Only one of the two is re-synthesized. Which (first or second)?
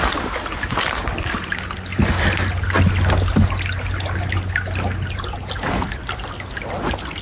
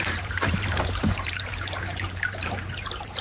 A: second